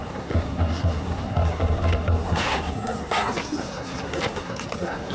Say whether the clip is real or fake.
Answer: fake